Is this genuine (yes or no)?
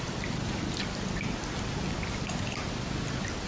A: yes